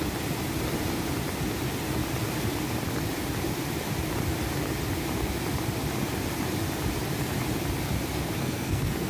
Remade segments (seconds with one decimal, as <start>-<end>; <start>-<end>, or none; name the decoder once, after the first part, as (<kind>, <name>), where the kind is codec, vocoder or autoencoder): 8.4-9.1 (codec, SNAC)